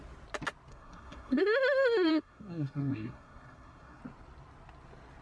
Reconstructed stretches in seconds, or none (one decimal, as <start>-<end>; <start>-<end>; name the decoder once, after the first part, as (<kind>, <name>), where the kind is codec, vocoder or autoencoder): 0.7-1.4 (codec, SNAC); 2.1-4.0